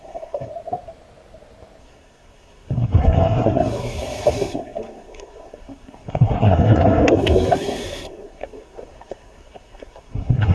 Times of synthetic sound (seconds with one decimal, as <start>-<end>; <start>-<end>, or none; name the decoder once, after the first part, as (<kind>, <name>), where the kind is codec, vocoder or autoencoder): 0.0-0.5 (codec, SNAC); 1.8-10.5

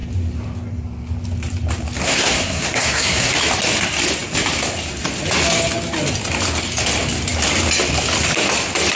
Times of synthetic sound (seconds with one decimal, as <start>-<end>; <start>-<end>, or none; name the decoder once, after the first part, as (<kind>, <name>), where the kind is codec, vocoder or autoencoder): 2.0-3.3 (codec, SNAC)

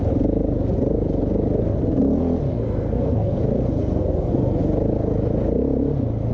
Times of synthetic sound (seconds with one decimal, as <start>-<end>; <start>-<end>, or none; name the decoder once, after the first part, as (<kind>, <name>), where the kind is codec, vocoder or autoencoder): 2.5-3.4 (codec, SNAC); 3.8-4.6

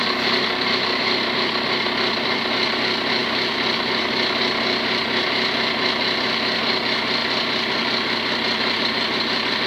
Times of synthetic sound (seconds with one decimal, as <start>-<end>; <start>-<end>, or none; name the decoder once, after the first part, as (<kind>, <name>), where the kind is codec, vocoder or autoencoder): none